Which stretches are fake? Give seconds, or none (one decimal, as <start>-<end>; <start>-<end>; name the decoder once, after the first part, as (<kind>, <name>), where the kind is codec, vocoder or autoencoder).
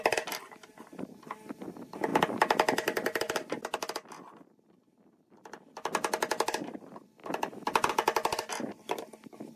7.2-7.9 (vocoder, BigVGAN v2)